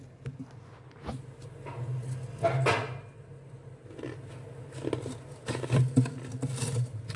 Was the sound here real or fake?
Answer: real